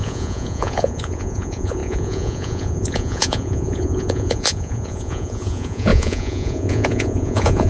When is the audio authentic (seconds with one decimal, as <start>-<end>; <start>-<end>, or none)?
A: none